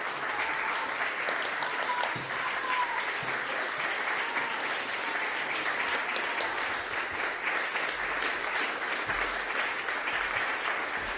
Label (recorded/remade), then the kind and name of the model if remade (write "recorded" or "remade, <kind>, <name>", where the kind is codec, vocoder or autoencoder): recorded